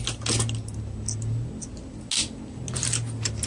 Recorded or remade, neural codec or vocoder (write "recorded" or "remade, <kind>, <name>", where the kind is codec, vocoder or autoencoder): recorded